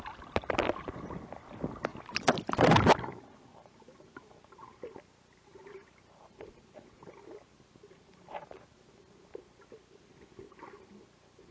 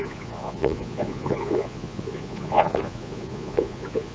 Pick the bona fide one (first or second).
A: first